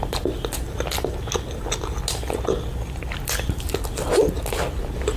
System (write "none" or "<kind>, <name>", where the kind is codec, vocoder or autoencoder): none